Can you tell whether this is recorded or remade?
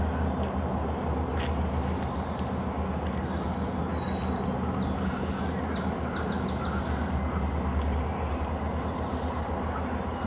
recorded